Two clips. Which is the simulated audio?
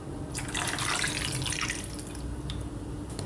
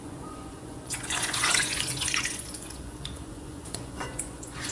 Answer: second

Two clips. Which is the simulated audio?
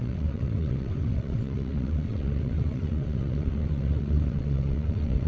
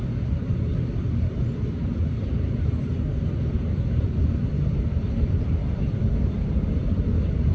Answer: first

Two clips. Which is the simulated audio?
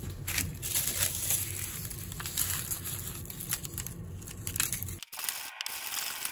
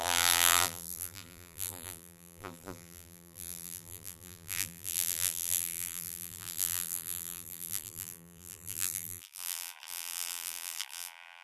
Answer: second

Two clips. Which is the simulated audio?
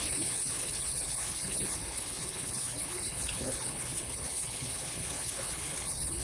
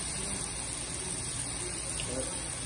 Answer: first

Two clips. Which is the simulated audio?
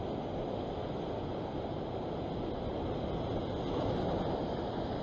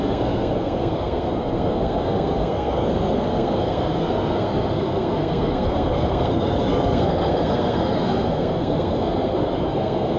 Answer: second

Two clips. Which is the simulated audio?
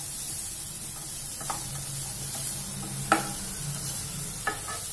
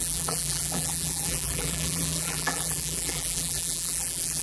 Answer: second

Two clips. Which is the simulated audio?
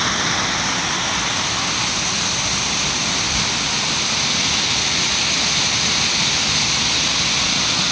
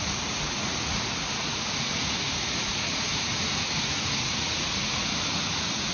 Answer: second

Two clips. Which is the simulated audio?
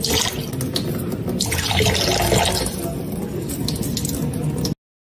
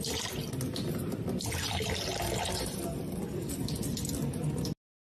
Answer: second